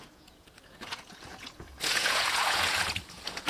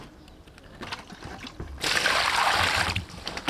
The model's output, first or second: first